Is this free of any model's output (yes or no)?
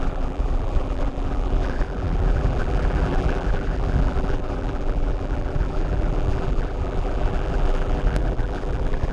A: no